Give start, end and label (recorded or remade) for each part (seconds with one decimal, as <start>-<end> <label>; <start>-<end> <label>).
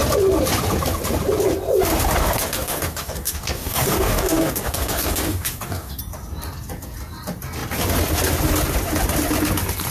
0.0-2.2 recorded; 2.2-6.0 remade; 6.0-9.9 recorded